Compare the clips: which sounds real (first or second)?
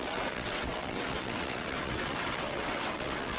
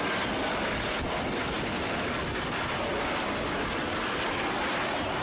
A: second